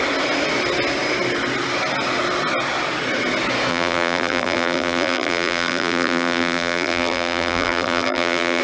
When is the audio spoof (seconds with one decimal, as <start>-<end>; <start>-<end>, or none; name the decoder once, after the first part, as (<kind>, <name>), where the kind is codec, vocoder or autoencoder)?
3.7-8.6 (vocoder, BigVGAN v2)